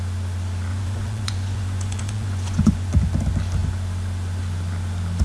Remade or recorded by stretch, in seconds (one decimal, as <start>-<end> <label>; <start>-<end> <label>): 0.0-0.7 recorded; 0.7-2.9 remade; 2.9-5.2 recorded